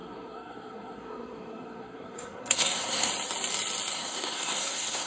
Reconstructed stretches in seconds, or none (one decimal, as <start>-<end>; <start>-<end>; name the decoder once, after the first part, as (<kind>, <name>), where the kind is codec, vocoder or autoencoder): 0.0-3.1 (codec, SNAC); 3.9-5.1